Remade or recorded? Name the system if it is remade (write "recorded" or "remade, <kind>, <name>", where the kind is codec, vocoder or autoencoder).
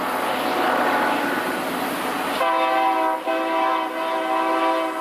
recorded